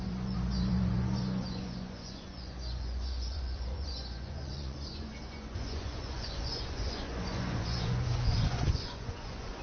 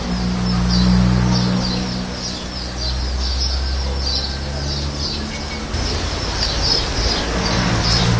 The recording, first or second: second